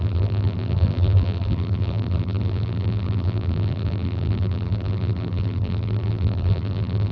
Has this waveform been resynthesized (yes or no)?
yes